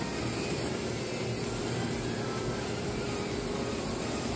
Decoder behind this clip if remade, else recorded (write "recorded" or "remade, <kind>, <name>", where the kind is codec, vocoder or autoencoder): recorded